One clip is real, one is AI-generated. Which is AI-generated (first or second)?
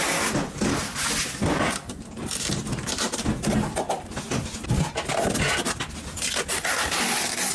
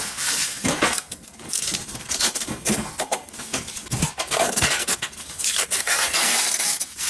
second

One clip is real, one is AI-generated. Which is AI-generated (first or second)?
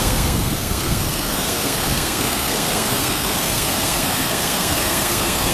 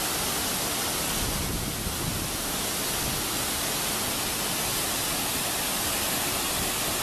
first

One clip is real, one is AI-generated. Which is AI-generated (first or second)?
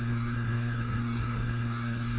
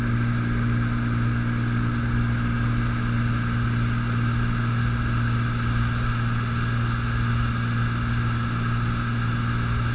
first